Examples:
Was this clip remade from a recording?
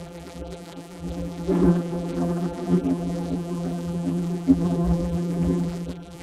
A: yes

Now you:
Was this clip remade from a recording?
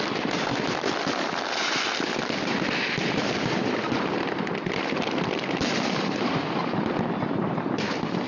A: yes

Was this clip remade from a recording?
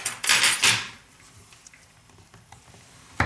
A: yes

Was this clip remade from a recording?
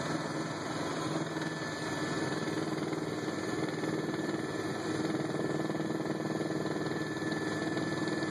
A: no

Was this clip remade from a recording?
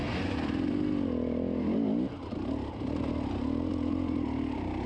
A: no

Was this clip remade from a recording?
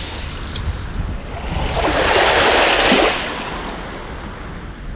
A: no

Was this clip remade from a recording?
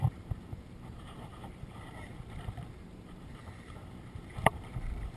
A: yes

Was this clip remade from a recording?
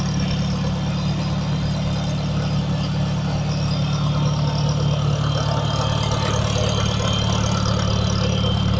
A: no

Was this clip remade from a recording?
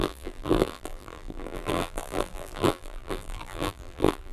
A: yes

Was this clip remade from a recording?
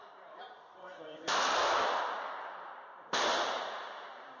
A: yes